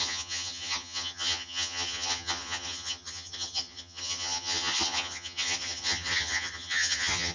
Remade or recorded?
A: remade